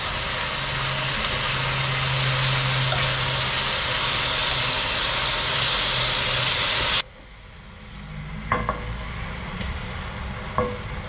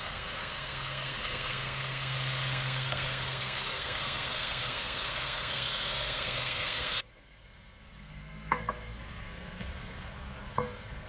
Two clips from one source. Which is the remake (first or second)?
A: second